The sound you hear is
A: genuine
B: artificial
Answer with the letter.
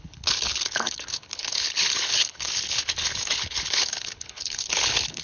B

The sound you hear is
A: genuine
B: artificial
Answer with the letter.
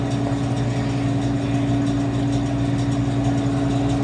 A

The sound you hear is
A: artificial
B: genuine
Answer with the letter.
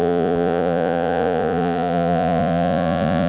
A